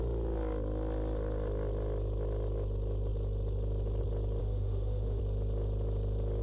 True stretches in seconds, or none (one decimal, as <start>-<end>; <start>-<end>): 0.0-4.4; 5.2-6.4